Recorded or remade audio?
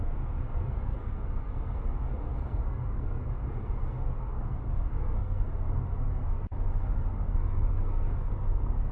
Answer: remade